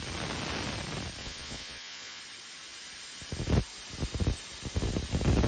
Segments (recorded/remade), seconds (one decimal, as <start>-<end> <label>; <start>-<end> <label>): 0.0-1.2 recorded; 1.2-2.2 remade; 2.2-5.5 recorded